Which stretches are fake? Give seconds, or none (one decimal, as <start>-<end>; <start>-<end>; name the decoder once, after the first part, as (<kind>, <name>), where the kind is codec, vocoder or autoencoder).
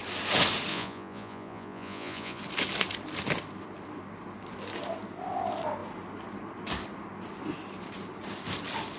0.7-2.4 (vocoder, Vocos)